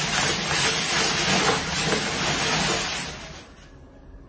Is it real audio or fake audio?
real